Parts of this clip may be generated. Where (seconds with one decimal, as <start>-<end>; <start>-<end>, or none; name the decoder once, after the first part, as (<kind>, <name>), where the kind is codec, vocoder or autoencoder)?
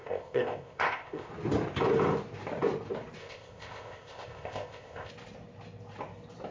0.0-1.3 (codec, ZipCodec); 3.2-5.1